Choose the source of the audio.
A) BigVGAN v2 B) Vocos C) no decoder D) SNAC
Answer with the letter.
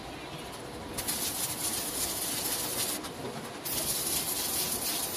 C